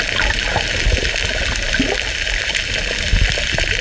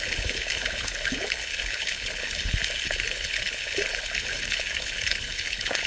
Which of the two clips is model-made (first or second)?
second